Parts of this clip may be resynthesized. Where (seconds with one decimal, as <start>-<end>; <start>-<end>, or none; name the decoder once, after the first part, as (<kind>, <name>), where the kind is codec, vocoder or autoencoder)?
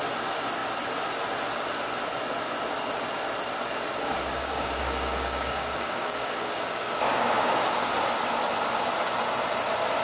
4.4-7.9 (codec, DAC)